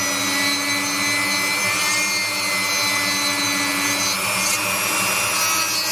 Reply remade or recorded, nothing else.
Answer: recorded